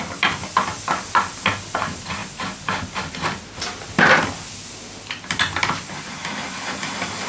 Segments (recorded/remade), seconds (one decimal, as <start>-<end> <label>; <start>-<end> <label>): 0.0-7.3 recorded